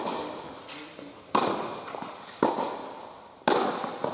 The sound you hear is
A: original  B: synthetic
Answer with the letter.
A